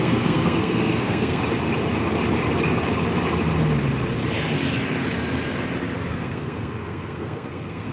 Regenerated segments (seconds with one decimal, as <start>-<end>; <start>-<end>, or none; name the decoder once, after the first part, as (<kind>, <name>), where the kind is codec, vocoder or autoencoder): 0.0-1.4 (codec, SNAC); 6.1-7.9

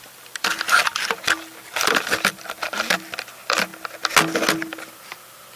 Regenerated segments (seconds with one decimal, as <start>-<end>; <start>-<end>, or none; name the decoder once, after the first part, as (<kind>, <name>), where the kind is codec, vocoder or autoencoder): 0.0-3.7 (vocoder, BigVGAN v2); 4.7-5.6